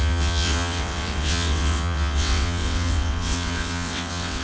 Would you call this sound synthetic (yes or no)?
yes